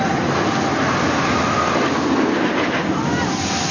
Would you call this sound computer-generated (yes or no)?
no